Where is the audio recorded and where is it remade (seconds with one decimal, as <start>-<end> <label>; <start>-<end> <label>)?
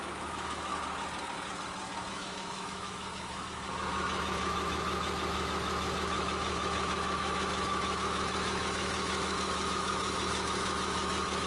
0.0-0.7 remade; 0.7-2.1 recorded; 2.1-11.5 remade